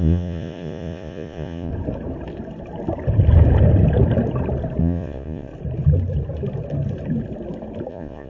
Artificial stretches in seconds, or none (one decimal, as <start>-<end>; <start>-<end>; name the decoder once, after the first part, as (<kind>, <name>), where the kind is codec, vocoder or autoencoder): 0.0-1.7 (vocoder, Vocos); 4.8-5.5; 7.9-8.3